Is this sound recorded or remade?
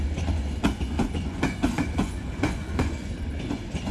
remade